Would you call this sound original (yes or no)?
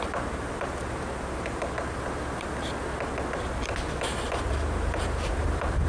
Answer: yes